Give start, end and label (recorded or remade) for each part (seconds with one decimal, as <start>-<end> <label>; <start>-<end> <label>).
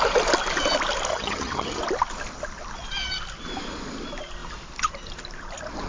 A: 0.0-1.1 recorded; 1.1-1.8 remade; 1.8-5.9 recorded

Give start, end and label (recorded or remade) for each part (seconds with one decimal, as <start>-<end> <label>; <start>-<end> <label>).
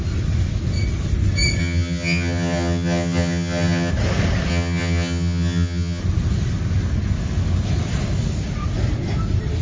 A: 0.0-1.6 recorded; 1.6-3.9 remade; 3.9-4.5 recorded; 4.5-6.0 remade; 6.0-9.6 recorded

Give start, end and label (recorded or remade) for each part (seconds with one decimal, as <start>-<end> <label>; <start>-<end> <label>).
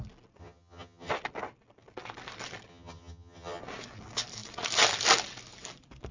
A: 0.0-0.4 recorded; 0.4-1.1 remade; 1.1-2.7 recorded; 2.7-3.6 remade; 3.6-6.1 recorded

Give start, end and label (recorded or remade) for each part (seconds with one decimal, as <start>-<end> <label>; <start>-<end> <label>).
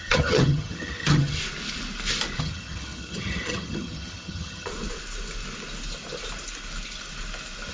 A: 0.0-1.4 remade; 1.4-2.4 recorded; 2.4-4.7 remade; 4.7-7.7 recorded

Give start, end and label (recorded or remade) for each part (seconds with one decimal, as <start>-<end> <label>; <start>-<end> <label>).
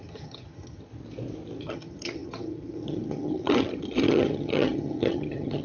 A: 0.0-0.9 remade; 0.9-1.6 recorded; 1.6-5.6 remade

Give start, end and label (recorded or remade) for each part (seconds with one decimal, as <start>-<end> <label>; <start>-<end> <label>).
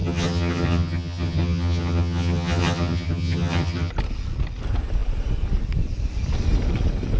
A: 0.0-3.9 remade; 3.9-7.2 recorded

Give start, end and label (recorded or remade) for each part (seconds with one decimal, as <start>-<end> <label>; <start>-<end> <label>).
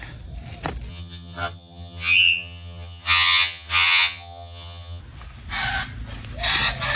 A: 0.0-0.9 recorded; 0.9-5.0 remade; 5.0-7.0 recorded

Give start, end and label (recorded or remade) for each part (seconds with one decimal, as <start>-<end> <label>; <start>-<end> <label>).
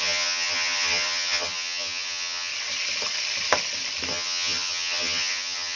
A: 0.0-2.5 remade; 2.5-4.1 recorded; 4.1-5.8 remade